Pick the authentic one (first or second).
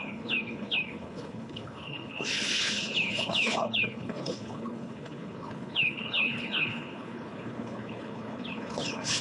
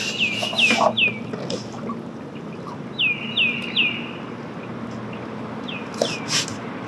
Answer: second